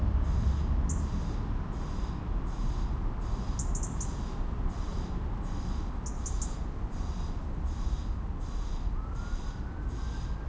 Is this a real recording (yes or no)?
yes